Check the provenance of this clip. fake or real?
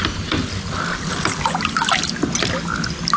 real